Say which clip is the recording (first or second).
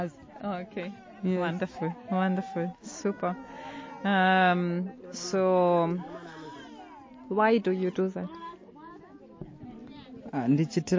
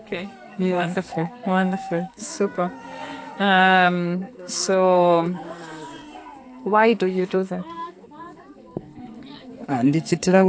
first